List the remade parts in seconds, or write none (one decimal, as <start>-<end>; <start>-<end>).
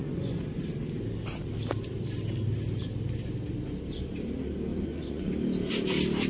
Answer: 0.0-0.6; 4.7-5.3